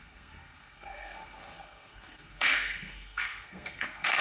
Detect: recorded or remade remade